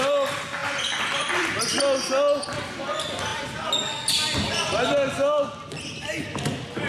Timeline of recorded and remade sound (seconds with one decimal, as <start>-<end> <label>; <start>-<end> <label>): 0.0-6.9 recorded